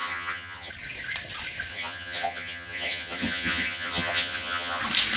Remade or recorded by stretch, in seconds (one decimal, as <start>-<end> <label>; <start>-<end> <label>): 0.0-0.7 remade; 0.7-1.7 recorded; 1.7-4.8 remade; 4.8-5.2 recorded